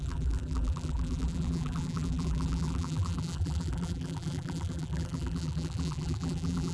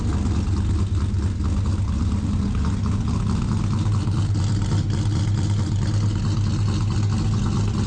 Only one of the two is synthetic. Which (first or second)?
first